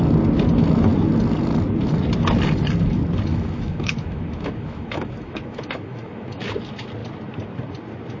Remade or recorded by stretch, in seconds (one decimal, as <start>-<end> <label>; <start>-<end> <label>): 0.0-3.3 recorded; 3.3-6.5 remade; 6.5-8.2 recorded